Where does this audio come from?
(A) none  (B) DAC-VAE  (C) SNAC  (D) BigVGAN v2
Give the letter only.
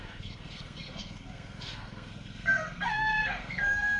C